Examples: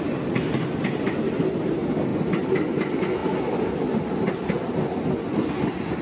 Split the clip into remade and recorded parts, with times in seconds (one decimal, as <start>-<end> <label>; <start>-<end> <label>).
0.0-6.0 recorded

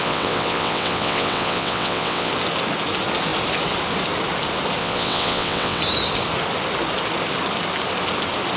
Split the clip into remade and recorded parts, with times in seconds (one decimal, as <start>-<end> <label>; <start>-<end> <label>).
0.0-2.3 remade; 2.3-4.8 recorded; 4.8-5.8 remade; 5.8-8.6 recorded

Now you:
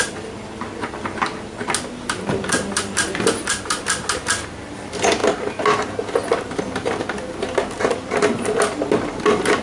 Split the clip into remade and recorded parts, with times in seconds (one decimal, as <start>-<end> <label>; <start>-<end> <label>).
0.0-9.6 recorded